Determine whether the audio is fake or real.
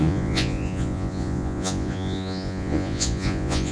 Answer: fake